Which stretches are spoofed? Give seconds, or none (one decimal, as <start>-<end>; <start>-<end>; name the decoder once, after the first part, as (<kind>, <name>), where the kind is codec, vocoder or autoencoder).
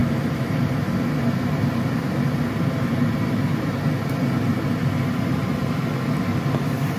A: none